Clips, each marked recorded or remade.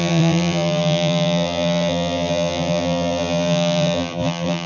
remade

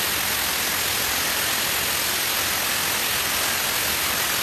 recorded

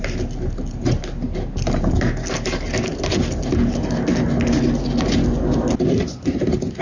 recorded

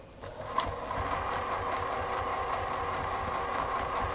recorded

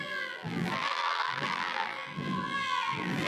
remade